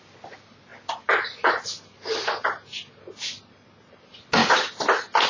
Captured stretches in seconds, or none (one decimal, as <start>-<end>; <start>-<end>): 0.0-5.3